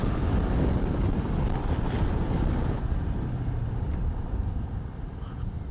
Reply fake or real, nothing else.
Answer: real